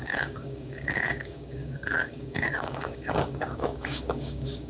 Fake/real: fake